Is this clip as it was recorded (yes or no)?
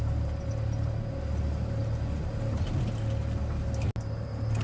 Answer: yes